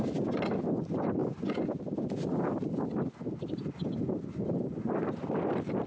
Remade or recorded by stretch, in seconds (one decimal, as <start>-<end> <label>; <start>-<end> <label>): 0.0-5.9 recorded